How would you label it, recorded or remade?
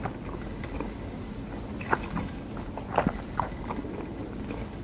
recorded